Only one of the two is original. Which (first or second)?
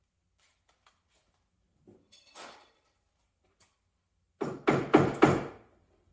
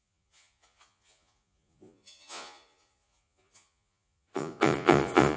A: first